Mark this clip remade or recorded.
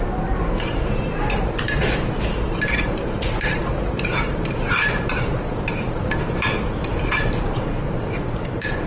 remade